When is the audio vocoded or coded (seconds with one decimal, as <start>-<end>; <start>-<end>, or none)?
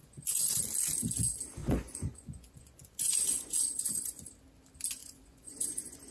0.0-0.6; 1.6-4.3; 5.0-6.1